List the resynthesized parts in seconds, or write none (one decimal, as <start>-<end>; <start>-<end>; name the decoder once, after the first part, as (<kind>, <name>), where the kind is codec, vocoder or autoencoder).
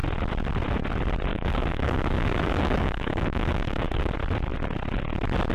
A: 1.3-4.1 (codec, DAC)